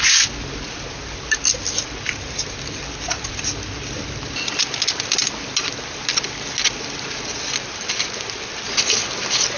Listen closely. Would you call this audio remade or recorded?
recorded